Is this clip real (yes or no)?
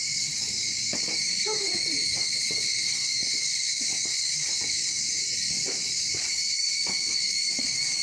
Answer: no